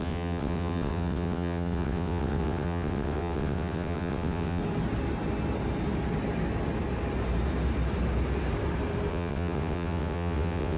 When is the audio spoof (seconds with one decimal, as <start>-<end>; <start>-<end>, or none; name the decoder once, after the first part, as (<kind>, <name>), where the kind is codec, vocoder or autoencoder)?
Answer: 0.0-4.6 (vocoder, WaveNeXt); 9.1-10.8

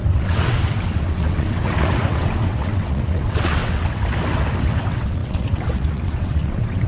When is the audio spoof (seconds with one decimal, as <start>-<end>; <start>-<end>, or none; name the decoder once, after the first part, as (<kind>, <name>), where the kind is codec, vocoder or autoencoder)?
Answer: 0.0-4.0 (vocoder, WaveNeXt); 4.6-6.9

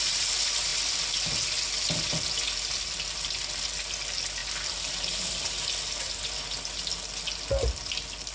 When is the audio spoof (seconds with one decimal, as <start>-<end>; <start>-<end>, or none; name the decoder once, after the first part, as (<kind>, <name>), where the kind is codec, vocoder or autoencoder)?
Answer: none

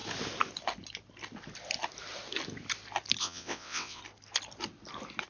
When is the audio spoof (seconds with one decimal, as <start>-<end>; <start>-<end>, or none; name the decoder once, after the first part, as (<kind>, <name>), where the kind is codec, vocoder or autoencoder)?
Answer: 3.2-4.0 (vocoder, WaveNeXt)

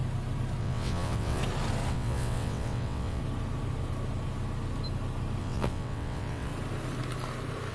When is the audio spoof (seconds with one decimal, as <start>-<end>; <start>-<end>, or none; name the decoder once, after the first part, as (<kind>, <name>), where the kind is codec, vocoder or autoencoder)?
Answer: 0.6-1.4 (vocoder, WaveNeXt); 1.9-3.2; 5.4-6.5